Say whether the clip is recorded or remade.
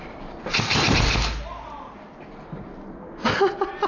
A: recorded